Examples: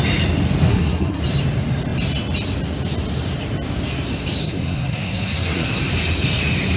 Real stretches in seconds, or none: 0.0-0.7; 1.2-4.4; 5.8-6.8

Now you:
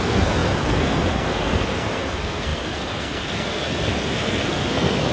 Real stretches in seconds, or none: none

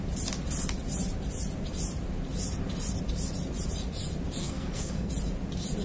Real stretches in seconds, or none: 0.0-4.4; 5.1-5.8

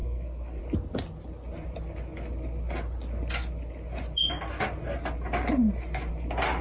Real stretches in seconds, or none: 0.6-6.6

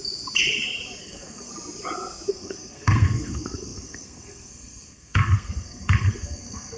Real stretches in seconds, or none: 0.0-1.0; 1.5-2.3

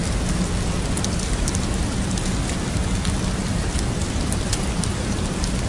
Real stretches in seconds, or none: 0.0-5.7

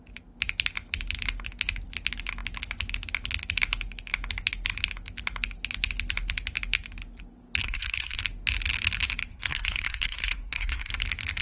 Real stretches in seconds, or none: 0.0-7.6; 8.2-9.3; 10.9-11.4

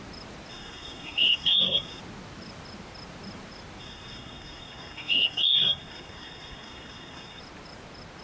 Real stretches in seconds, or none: 0.0-0.5; 2.0-3.8; 7.4-8.2